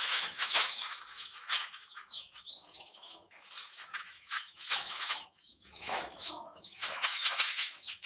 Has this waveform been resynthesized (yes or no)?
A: yes